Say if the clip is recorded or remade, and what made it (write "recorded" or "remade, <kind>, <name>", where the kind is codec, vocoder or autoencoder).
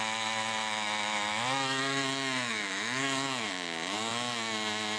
remade, autoencoder, DAC-VAE